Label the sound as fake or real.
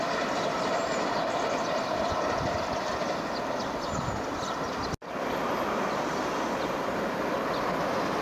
real